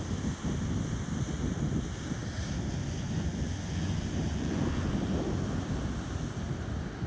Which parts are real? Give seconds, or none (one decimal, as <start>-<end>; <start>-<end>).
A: 0.0-2.8; 4.9-7.1

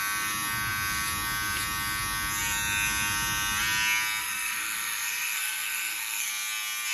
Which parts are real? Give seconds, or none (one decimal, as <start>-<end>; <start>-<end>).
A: 0.0-4.2; 6.3-6.9

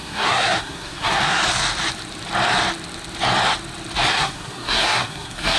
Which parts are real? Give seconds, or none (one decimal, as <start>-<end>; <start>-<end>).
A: 1.4-4.1

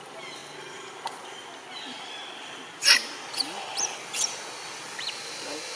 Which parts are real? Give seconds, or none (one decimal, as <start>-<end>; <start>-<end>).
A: 0.0-5.8

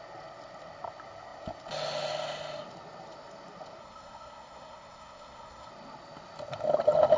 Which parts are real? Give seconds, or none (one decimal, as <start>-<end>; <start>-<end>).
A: 0.0-3.8; 5.7-7.2

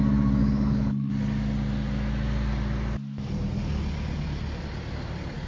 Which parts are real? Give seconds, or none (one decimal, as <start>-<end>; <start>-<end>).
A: 0.0-0.4; 1.1-5.5

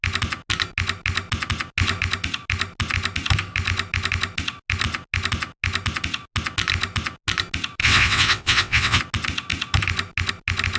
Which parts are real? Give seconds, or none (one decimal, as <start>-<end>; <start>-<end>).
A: 0.0-7.8; 9.0-10.8